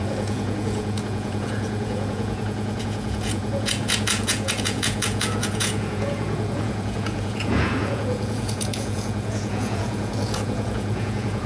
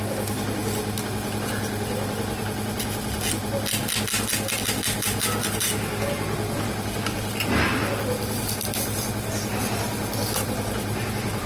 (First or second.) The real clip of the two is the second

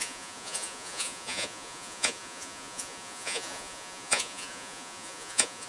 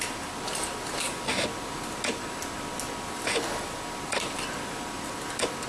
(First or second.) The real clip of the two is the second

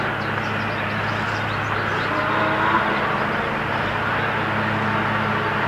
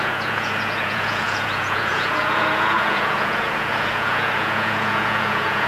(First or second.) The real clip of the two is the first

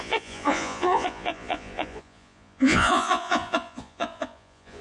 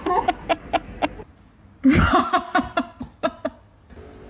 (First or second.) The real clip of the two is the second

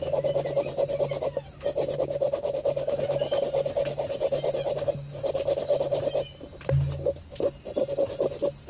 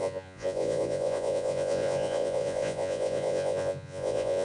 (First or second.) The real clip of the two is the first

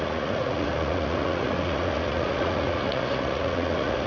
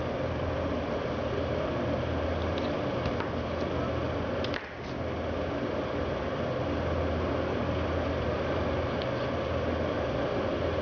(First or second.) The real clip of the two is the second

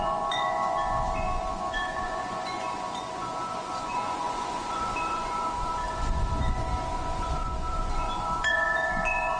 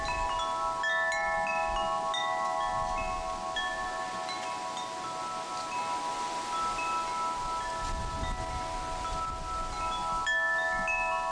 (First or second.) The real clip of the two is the second